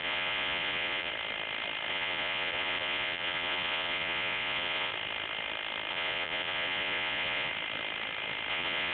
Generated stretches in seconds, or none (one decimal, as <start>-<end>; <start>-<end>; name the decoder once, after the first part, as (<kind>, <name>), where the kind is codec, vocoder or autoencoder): 0.0-1.1 (vocoder, Vocos); 1.9-4.9; 5.9-7.5; 8.5-8.9